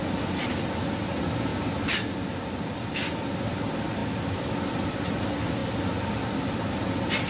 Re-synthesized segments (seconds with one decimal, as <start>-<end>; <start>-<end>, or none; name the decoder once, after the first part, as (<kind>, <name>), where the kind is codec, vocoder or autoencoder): 5.6-6.8 (vocoder, BigVGAN v2)